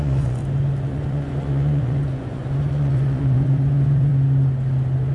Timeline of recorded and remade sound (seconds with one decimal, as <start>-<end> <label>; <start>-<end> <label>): 0.0-0.4 remade; 0.4-0.9 recorded; 0.9-4.1 remade; 4.1-5.1 recorded